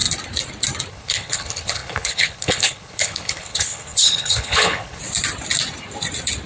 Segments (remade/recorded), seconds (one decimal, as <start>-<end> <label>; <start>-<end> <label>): 0.0-0.9 recorded; 0.9-5.0 remade; 5.0-6.5 recorded